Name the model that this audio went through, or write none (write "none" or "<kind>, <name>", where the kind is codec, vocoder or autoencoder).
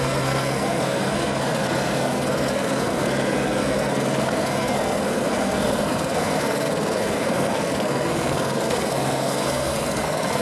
codec, SNAC